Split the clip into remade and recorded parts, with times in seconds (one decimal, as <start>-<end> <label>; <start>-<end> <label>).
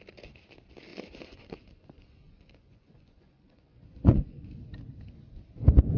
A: 0.0-0.9 recorded; 0.9-4.5 remade; 4.5-6.0 recorded